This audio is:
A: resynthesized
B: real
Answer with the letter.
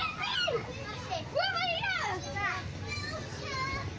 B